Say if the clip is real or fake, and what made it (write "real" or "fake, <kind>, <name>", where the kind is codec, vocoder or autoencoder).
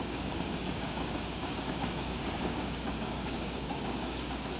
fake, codec, DAC